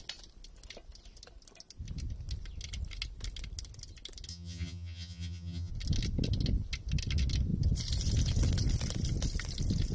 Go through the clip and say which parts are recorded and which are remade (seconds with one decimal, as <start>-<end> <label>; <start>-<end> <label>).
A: 0.0-4.3 recorded; 4.3-5.7 remade; 5.7-9.9 recorded